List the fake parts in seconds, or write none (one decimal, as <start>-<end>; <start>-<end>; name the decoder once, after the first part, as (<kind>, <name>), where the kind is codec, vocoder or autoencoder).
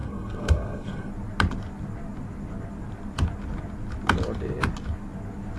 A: 0.0-1.1 (codec, SNAC)